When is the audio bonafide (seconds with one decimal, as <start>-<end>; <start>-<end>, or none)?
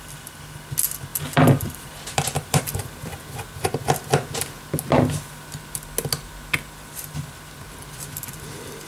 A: 0.0-1.1; 2.6-8.9